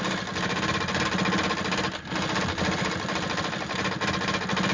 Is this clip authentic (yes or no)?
yes